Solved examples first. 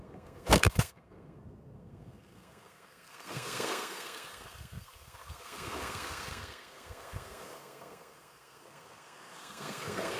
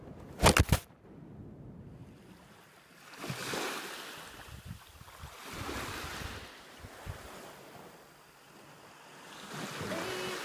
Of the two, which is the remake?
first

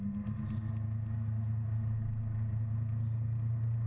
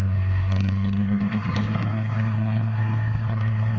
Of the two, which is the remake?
second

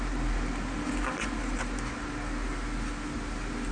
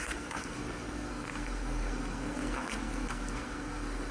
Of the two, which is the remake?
second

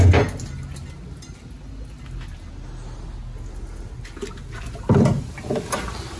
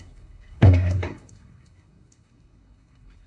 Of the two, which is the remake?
second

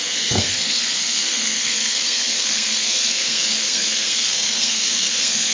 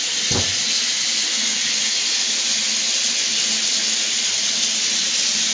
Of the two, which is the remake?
first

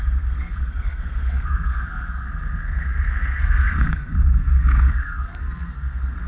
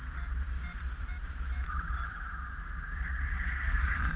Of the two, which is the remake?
first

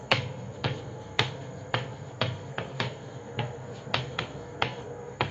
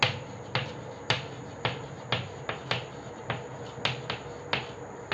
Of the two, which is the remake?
first